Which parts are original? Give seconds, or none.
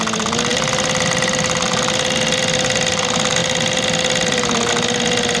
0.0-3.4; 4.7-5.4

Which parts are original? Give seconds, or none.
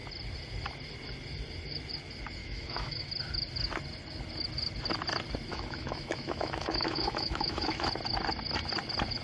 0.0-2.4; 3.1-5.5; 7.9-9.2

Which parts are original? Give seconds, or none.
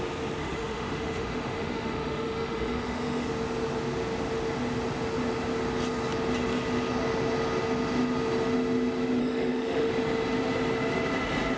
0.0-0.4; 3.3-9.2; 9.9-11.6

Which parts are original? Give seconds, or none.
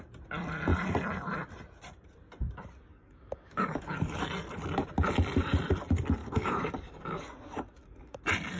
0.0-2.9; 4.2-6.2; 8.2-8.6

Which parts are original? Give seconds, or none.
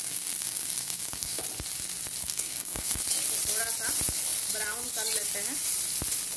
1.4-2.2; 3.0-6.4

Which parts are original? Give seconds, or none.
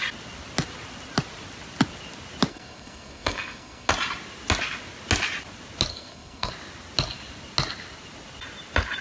0.0-2.5; 3.9-5.9; 6.5-9.0